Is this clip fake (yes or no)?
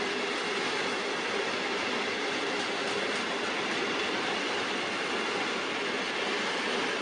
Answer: no